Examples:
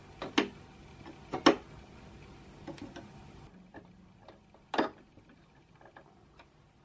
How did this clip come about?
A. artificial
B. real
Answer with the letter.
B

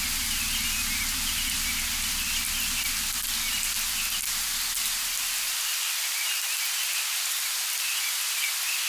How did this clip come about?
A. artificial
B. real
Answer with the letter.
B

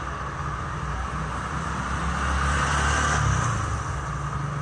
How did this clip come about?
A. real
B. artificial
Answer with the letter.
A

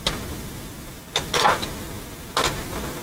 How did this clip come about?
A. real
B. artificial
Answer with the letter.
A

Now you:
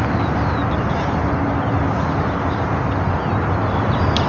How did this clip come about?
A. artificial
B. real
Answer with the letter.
B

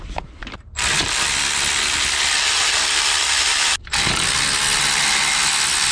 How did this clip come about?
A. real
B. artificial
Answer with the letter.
A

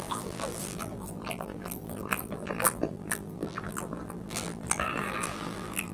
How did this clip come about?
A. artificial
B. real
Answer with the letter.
A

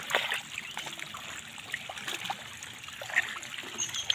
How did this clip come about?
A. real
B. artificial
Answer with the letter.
A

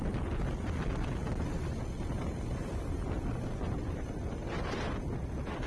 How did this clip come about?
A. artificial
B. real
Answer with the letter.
B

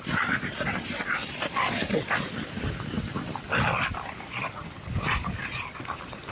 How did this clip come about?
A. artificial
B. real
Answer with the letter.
A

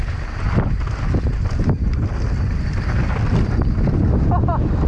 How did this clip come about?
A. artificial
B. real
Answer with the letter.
B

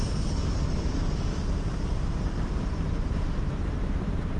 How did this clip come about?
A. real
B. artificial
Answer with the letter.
B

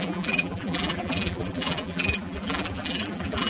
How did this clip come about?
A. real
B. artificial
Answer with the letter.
B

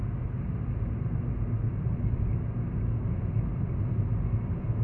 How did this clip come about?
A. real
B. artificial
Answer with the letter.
A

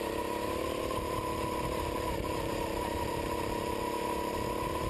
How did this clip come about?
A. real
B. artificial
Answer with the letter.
B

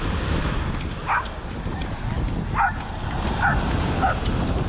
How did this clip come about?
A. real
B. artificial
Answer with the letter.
A